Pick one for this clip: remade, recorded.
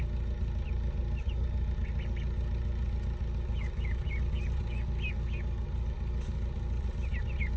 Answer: recorded